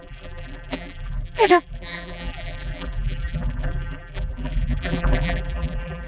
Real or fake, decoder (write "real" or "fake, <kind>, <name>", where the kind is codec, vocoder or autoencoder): fake, vocoder, BigVGAN v2